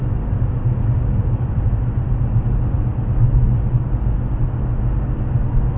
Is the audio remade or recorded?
recorded